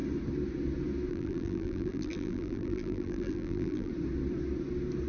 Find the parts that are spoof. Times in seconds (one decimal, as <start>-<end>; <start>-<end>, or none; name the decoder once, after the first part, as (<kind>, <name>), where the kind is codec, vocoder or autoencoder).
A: 1.1-3.9 (vocoder, BigVGAN v2)